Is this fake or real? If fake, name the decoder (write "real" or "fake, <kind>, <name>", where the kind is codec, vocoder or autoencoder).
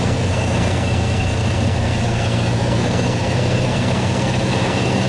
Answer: fake, codec, SNAC